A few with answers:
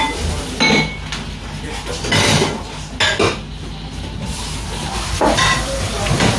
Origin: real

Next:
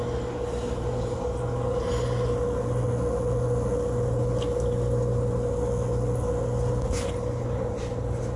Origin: real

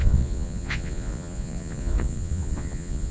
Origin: fake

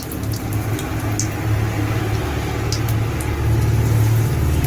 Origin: real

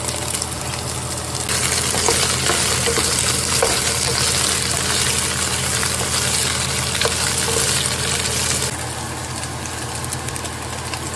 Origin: real